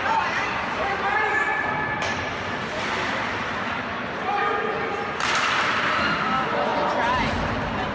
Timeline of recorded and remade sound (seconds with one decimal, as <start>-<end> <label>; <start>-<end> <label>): 0.0-7.9 recorded